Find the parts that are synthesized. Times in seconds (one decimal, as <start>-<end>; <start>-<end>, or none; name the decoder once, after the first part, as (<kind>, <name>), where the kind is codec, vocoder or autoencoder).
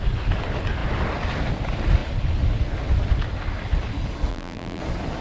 4.3-4.8 (vocoder, BigVGAN v2)